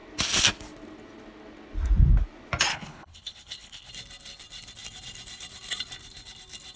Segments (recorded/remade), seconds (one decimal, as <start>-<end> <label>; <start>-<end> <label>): 0.0-2.7 recorded; 2.7-3.9 remade; 3.9-6.8 recorded